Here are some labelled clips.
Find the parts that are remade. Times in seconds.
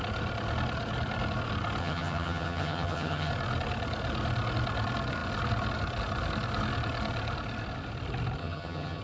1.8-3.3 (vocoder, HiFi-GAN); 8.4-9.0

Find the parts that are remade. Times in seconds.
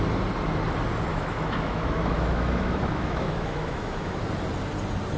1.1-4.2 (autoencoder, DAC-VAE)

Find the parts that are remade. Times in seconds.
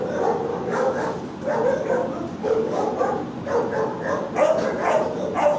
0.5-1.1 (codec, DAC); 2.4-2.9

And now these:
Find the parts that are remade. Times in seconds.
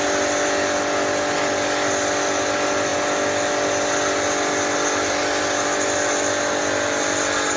none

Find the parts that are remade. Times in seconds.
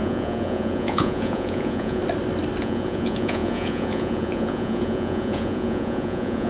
0.0-2.0 (vocoder, Vocos); 2.6-6.5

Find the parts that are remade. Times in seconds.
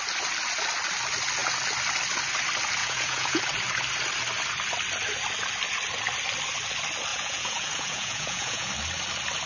2.8-3.4 (vocoder, Vocos); 7.1-8.7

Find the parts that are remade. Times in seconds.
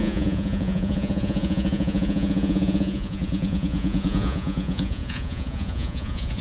0.0-6.4 (vocoder, Vocos)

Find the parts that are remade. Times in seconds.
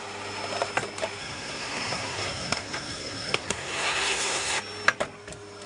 1.2-4.6 (codec, SNAC)